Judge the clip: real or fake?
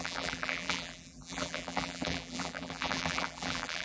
fake